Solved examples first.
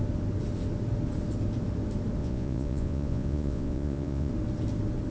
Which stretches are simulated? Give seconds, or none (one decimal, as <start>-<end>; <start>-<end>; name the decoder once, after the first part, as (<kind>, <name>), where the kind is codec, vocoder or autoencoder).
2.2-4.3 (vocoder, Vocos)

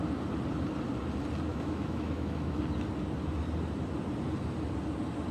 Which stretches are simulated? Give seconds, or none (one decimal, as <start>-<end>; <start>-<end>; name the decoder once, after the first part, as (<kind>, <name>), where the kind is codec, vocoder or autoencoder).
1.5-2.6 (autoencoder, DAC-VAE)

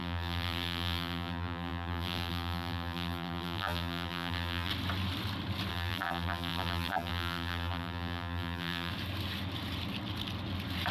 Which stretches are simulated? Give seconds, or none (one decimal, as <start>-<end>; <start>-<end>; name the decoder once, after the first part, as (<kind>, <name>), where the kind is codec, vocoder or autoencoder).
0.0-4.7 (vocoder, BigVGAN v2); 5.7-8.9

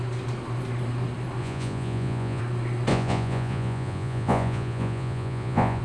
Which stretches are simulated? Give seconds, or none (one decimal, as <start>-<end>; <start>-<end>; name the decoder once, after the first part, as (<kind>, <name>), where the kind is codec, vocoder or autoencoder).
1.4-2.4 (vocoder, Vocos); 2.9-5.8

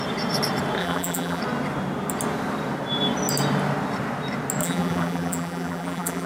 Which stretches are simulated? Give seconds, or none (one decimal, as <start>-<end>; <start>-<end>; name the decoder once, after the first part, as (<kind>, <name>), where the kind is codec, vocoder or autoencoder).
0.8-1.4 (vocoder, BigVGAN v2); 4.6-6.3

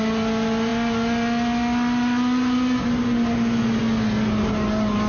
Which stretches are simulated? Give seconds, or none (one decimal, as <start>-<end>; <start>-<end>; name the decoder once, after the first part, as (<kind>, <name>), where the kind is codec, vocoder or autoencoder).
none

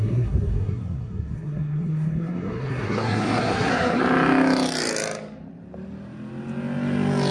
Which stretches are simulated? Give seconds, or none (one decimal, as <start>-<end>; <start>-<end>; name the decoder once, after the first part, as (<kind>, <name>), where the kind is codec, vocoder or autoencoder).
0.0-4.0 (codec, SNAC)

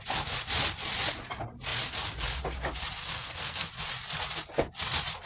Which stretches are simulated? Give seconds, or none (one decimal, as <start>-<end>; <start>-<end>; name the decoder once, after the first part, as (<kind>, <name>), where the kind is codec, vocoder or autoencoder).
3.0-3.7 (codec, SNAC)